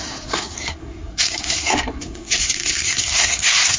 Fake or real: fake